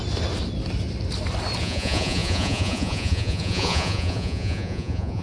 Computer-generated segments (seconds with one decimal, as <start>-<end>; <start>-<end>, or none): 1.6-5.2